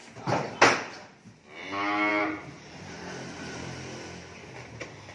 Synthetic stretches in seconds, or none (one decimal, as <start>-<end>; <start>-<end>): 2.1-3.6